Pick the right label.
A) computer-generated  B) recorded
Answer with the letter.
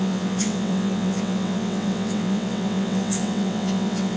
A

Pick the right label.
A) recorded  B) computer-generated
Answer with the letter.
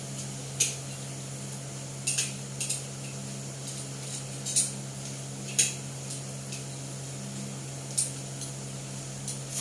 A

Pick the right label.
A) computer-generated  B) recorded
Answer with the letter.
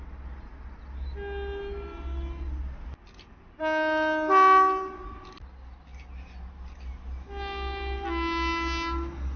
B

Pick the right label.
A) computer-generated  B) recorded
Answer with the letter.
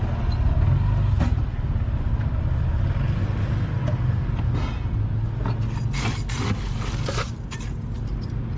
B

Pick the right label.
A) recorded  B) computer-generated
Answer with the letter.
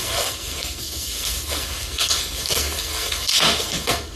B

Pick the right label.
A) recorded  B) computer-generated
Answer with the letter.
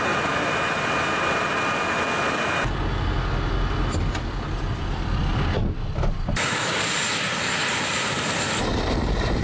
A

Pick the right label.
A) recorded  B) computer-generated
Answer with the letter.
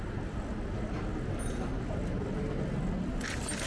A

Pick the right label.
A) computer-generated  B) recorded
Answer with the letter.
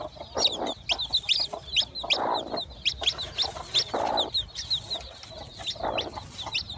B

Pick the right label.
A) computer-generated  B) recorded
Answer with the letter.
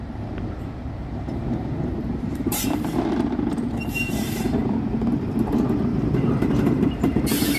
A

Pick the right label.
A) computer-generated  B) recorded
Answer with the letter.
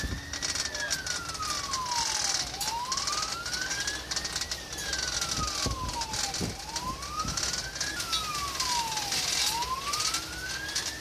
B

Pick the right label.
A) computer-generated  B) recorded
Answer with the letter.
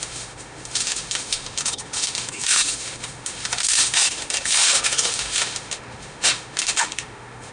A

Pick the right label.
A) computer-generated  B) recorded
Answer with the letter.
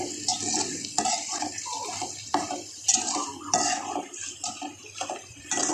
B